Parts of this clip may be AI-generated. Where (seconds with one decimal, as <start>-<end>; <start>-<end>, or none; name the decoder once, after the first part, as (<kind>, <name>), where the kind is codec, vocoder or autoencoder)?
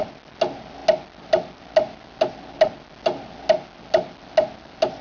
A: none